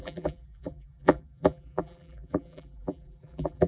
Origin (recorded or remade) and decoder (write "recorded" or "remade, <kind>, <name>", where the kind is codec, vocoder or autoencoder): remade, vocoder, BigVGAN v2